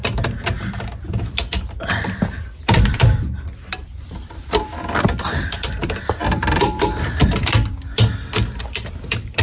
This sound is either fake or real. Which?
fake